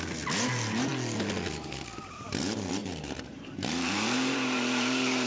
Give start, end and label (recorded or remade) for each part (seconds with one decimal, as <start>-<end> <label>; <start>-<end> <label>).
0.0-2.8 recorded; 2.8-5.3 remade